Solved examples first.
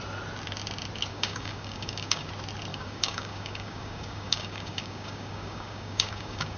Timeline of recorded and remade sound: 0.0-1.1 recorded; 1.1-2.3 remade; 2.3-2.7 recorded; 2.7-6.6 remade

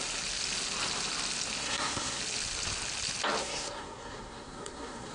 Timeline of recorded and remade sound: 0.0-1.6 recorded; 1.6-2.2 remade; 2.2-3.4 recorded; 3.4-5.1 remade

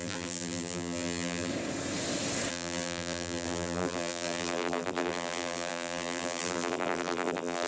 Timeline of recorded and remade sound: 0.0-1.5 remade; 1.5-2.5 recorded; 2.5-7.7 remade

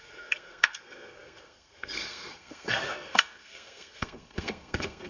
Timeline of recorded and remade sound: 0.0-5.1 remade

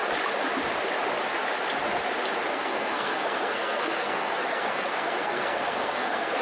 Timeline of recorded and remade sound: 0.0-2.5 recorded; 2.5-6.4 remade

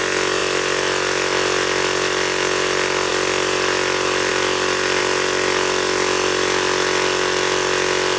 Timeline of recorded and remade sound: 0.0-8.2 recorded

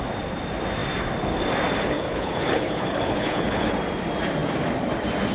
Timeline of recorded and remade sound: 0.0-1.9 recorded; 1.9-3.7 remade; 3.7-5.3 recorded

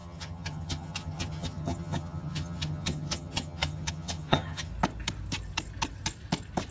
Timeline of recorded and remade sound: 0.0-4.7 remade; 4.7-6.7 recorded